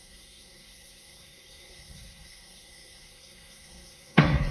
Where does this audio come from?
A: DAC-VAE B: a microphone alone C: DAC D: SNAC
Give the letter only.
D